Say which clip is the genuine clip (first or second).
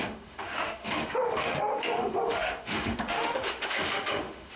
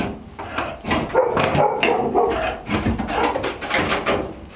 second